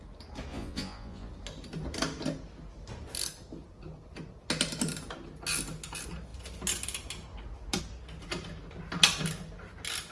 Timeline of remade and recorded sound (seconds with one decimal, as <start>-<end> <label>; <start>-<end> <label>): 0.0-0.5 recorded; 0.5-1.3 remade; 1.3-10.1 recorded